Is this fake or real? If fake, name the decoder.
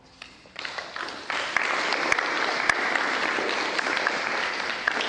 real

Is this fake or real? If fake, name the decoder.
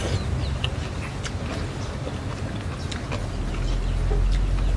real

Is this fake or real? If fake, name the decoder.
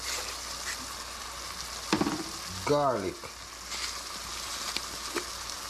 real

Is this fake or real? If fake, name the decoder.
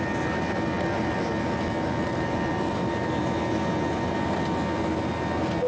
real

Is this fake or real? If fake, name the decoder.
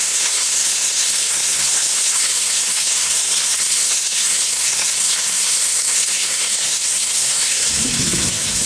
fake, codec, SNAC